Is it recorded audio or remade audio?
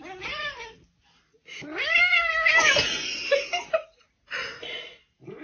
recorded